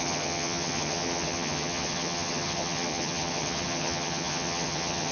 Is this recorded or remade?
remade